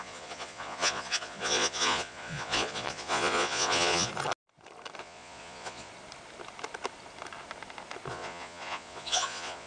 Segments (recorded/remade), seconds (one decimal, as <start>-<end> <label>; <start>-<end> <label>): 0.0-4.1 remade; 4.1-5.0 recorded; 5.0-5.9 remade; 5.9-8.1 recorded; 8.1-9.7 remade